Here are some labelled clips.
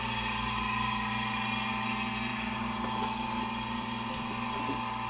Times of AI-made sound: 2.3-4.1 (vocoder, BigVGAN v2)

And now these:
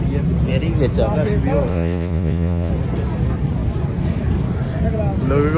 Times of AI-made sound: 1.7-2.7 (vocoder, Vocos)

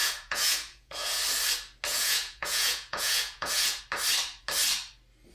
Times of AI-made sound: 0.0-1.2 (vocoder, Vocos); 1.9-3.8

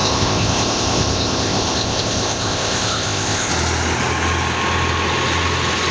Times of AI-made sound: 0.0-3.5 (codec, ZipCodec)

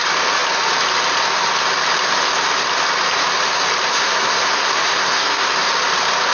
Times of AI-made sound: 3.9-5.5 (codec, SNAC)

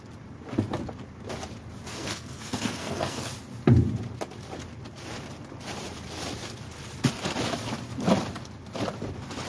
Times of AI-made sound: 1.9-3.3 (codec, SNAC)

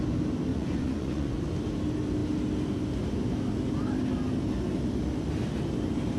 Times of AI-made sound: 0.5-1.4 (vocoder, Vocos)

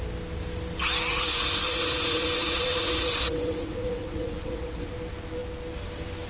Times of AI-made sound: 1.1-4.9 (vocoder, WaveNeXt)